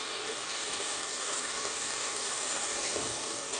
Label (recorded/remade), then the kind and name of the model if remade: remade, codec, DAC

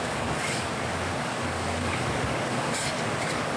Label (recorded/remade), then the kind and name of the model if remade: remade, codec, DAC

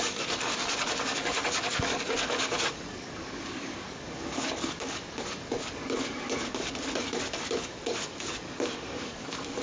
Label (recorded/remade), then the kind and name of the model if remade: remade, codec, DAC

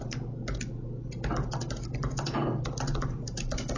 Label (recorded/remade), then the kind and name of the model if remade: recorded